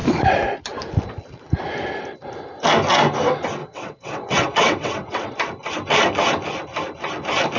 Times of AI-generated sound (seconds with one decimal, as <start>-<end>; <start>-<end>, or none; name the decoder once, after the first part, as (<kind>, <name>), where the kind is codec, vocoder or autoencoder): 3.6-5.3 (vocoder, WaveNeXt)